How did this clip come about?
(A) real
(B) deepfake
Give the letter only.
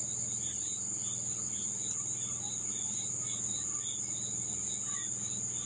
A